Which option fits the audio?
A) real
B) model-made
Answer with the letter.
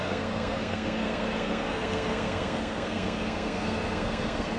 B